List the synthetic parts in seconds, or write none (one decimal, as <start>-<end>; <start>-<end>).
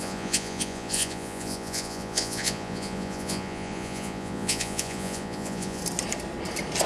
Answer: 0.0-5.8